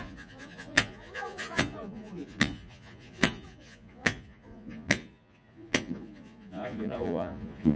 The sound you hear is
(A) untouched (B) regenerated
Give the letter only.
B